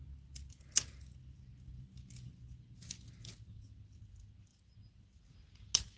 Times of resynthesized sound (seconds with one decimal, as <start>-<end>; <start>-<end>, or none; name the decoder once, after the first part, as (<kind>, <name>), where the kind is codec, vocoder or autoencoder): none